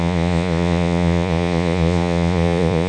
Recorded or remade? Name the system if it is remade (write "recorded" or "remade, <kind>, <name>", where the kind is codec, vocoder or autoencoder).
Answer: remade, vocoder, Vocos